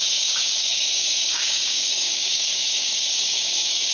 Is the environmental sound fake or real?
fake